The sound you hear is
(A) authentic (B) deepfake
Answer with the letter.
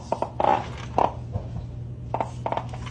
A